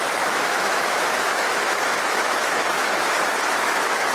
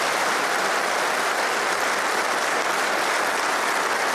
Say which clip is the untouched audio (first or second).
second